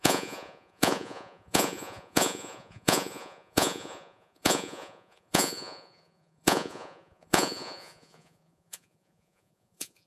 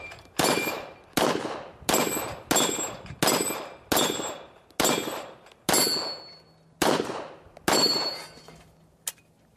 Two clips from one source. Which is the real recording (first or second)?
second